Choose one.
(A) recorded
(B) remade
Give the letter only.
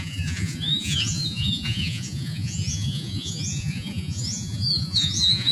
B